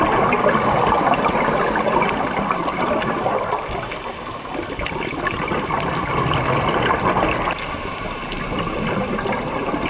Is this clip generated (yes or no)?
no